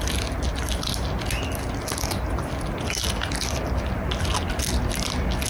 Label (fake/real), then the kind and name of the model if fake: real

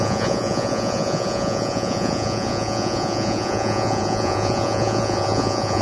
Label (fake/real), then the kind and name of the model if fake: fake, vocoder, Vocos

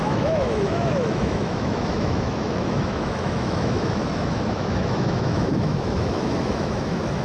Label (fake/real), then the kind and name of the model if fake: fake, autoencoder, DAC-VAE